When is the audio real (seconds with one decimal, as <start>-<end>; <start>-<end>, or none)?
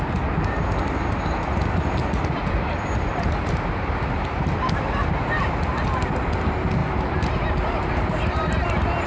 0.0-3.1; 3.9-6.8